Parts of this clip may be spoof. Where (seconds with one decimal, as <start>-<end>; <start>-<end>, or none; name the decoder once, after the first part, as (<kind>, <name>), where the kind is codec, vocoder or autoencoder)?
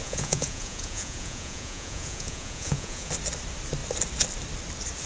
0.0-3.1 (vocoder, Vocos)